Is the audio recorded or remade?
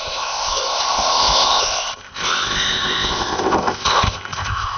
remade